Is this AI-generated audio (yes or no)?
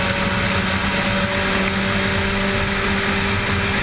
no